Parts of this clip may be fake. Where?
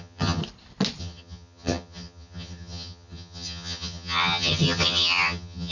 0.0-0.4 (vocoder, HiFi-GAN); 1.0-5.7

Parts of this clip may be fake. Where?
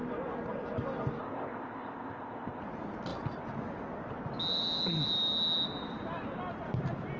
1.2-2.6 (codec, ZipCodec)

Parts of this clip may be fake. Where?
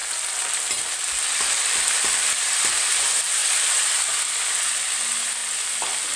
none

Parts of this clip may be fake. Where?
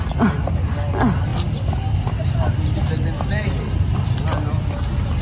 3.4-4.1 (vocoder, BigVGAN v2)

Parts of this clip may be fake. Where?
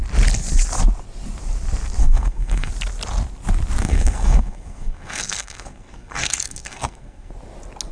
2.0-2.7 (codec, SNAC); 3.8-7.3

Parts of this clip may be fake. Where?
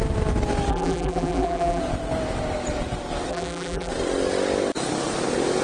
0.7-1.8 (vocoder, BigVGAN v2); 3.3-3.9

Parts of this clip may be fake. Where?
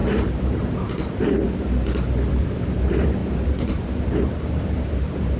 none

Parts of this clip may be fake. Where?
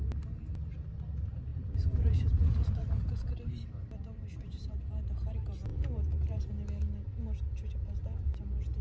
1.5-5.3 (vocoder, BigVGAN v2); 5.7-6.5